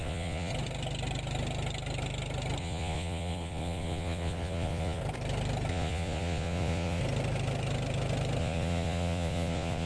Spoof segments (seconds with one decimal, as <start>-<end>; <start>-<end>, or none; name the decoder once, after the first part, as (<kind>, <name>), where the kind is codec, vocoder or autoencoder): 0.0-0.5 (vocoder, Vocos); 2.6-5.0; 5.7-7.0; 8.4-9.9